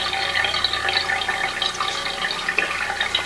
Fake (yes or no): no